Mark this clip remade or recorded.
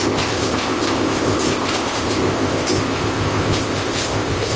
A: remade